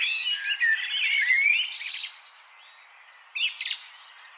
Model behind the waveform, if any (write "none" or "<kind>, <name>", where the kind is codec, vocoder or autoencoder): none